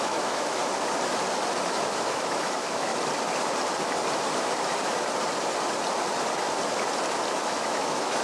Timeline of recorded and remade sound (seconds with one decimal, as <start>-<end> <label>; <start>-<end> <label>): 0.0-0.6 remade; 0.6-1.6 recorded; 1.6-2.9 remade; 2.9-7.4 recorded; 7.4-8.2 remade